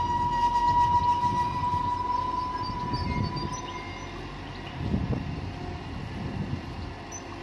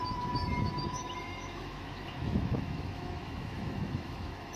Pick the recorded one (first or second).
first